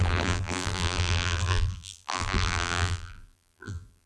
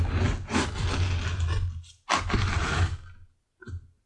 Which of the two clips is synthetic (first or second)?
first